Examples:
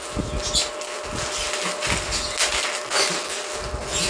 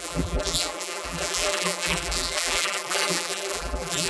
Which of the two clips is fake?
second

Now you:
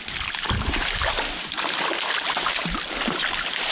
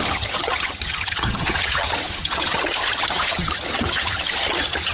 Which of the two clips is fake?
second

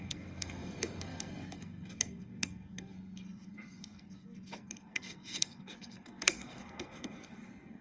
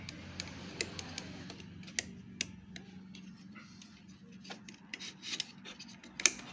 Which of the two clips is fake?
first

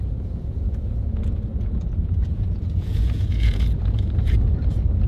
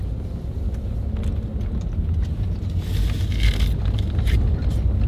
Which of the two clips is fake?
first